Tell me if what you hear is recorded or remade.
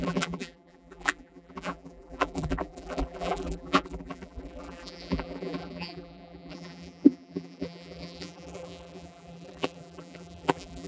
remade